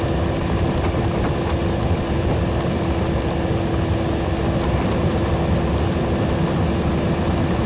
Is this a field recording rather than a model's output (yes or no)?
yes